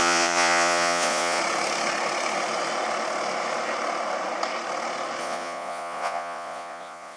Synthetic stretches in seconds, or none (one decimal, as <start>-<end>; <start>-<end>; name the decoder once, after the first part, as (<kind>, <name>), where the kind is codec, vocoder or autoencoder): 0.0-1.4 (vocoder, Vocos); 5.2-7.2